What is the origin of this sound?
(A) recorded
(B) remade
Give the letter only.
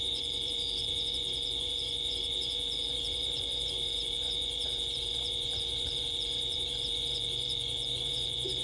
B